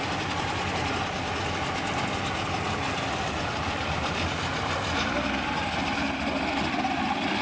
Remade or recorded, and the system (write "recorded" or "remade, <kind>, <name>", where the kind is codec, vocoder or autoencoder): recorded